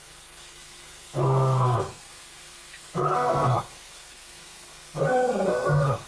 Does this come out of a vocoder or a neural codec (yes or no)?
yes